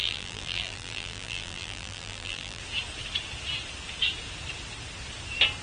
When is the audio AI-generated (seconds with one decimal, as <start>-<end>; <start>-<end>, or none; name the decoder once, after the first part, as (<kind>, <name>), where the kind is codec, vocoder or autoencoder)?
0.0-2.6 (vocoder, BigVGAN v2)